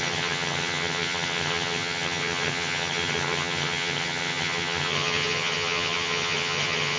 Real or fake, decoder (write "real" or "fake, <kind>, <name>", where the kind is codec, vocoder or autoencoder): fake, vocoder, HiFi-GAN